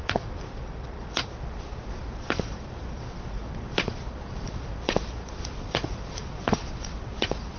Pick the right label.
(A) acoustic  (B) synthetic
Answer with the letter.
B